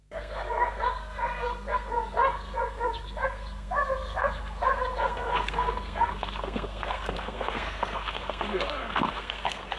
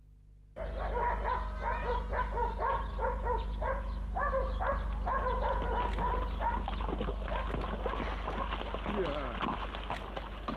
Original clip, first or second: second